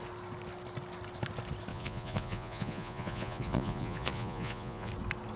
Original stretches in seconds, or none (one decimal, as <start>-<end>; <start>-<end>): 0.0-1.7; 4.9-5.4